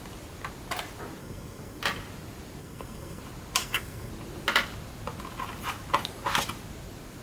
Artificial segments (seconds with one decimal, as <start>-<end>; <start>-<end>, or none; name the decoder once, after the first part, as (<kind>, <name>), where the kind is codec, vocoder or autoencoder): 1.2-1.8 (codec, SNAC); 2.6-3.2; 3.6-4.1